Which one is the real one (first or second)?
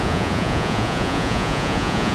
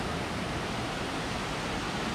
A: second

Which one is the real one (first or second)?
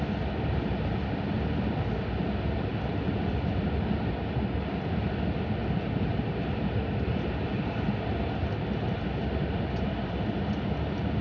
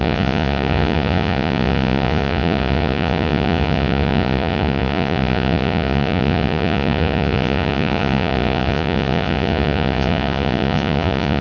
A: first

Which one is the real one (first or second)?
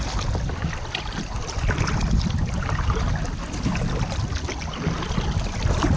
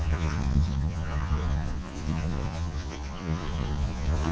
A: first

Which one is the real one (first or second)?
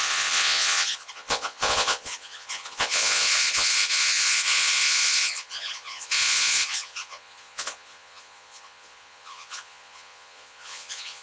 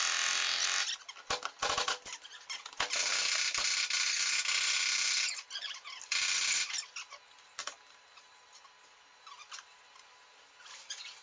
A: second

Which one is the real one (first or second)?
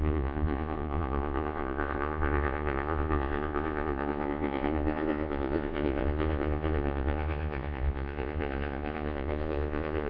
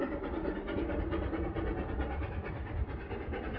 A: second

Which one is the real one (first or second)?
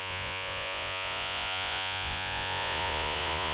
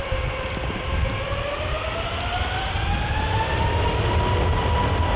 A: second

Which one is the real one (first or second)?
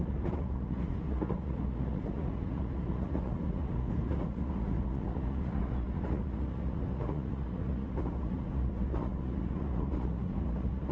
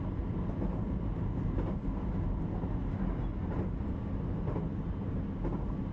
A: second